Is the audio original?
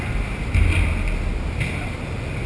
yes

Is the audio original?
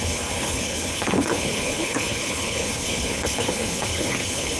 no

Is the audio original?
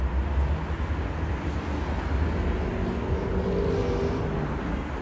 yes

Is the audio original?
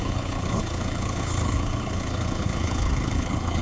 no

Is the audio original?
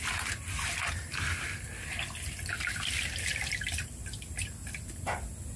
yes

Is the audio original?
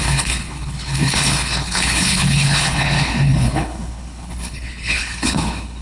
no